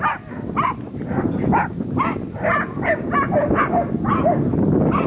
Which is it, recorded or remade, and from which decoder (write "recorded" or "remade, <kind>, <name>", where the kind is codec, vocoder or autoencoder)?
recorded